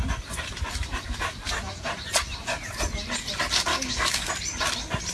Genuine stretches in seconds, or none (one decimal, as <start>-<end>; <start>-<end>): 0.0-3.7; 4.3-5.1